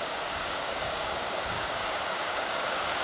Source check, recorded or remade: remade